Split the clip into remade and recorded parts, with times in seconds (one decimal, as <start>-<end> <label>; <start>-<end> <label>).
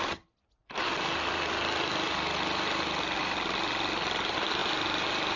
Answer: 0.0-5.4 recorded